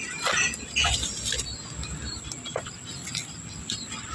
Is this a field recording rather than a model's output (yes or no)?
yes